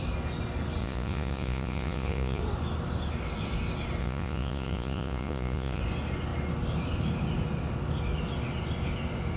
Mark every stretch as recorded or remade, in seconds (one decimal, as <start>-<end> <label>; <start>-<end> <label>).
0.0-0.8 recorded; 0.8-2.4 remade; 2.4-4.0 recorded; 4.0-5.8 remade; 5.8-9.4 recorded